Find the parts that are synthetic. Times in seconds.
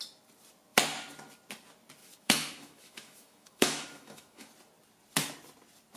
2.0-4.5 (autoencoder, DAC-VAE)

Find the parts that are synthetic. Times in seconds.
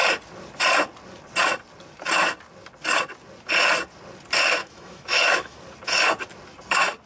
4.6-5.6 (autoencoder, DAC-VAE)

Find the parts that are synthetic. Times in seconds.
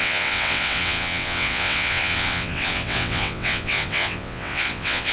0.0-5.1 (vocoder, WaveNeXt)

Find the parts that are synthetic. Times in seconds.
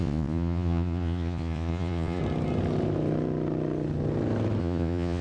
0.0-2.2 (vocoder, Vocos); 4.6-5.2